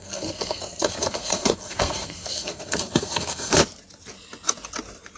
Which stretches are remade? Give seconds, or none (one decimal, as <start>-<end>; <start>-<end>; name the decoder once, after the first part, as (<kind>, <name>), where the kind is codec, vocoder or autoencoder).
0.0-3.6 (codec, SNAC)